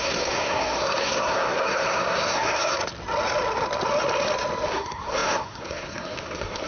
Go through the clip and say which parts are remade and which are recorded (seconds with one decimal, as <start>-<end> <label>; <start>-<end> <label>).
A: 0.0-2.8 remade; 2.8-4.7 recorded; 4.7-6.7 remade